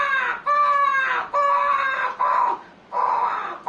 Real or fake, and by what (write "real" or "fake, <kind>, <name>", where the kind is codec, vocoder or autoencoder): real